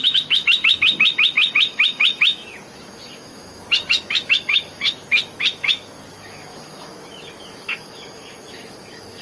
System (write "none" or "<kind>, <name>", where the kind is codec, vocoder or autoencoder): autoencoder, DAC-VAE